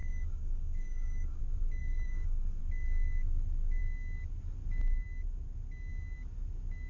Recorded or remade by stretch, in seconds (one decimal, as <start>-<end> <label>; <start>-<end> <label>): 0.0-1.4 remade; 1.4-1.8 recorded; 1.8-2.6 remade; 2.6-6.9 recorded